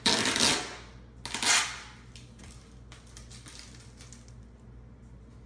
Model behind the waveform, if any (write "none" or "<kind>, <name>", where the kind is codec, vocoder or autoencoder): none